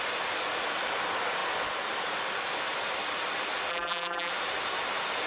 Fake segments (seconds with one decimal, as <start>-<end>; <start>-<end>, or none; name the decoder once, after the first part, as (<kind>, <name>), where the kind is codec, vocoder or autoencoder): 3.7-4.3 (vocoder, BigVGAN v2)